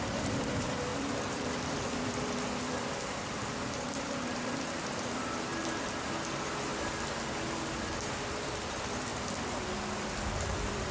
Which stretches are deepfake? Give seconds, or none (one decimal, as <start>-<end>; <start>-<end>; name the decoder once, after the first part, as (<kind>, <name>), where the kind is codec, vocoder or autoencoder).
0.0-6.7 (vocoder, BigVGAN v2); 8.2-9.1; 9.8-10.9